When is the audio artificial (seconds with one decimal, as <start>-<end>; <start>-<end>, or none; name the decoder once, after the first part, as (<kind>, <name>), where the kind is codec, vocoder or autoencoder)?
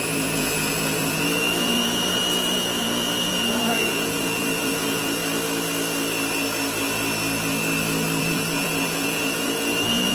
0.0-5.2 (vocoder, Vocos); 8.2-10.1